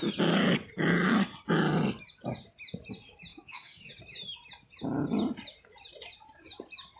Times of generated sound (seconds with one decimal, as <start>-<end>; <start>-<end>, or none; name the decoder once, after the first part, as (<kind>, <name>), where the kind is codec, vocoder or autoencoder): 3.3-3.9 (codec, DAC)